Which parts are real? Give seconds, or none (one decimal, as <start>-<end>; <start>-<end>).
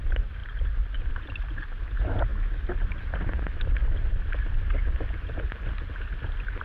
0.0-6.6